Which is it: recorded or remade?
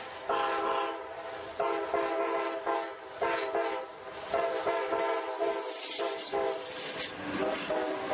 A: recorded